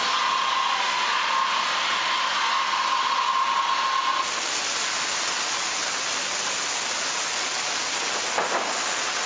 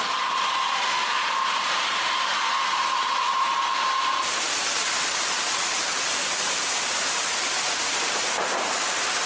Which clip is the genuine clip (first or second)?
first